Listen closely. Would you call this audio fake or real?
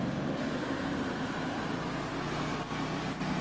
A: real